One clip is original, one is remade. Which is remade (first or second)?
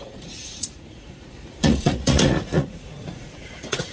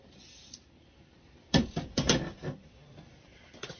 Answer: first